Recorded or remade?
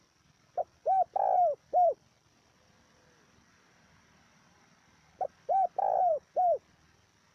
remade